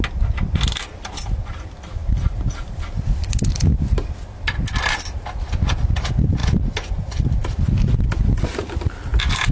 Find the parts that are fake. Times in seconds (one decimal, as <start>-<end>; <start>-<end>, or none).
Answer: none